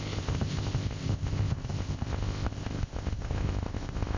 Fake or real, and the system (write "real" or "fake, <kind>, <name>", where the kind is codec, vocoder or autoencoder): fake, codec, ZipCodec